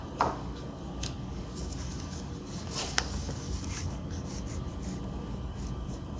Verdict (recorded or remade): remade